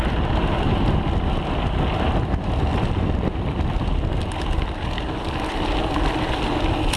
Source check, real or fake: real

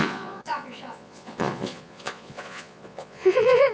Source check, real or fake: fake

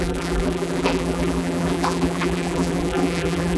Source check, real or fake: fake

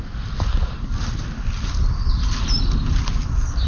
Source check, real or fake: real